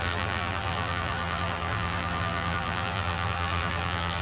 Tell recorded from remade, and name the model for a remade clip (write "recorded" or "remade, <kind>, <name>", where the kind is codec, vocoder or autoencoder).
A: remade, vocoder, BigVGAN v2